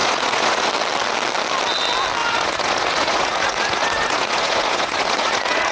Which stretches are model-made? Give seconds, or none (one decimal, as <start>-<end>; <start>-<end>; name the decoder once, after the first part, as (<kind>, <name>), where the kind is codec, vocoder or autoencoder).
0.0-0.7 (vocoder, Vocos); 2.2-5.7